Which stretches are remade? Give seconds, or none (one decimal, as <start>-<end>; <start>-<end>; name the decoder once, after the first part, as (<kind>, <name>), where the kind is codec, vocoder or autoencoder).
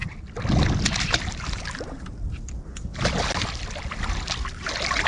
none